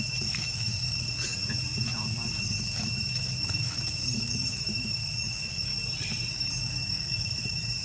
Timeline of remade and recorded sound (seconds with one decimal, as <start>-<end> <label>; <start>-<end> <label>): 0.0-1.3 remade; 1.3-2.4 recorded; 2.4-5.7 remade; 5.7-6.3 recorded; 6.3-7.8 remade